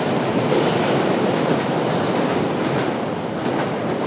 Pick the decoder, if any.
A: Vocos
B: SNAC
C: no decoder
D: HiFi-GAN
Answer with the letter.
C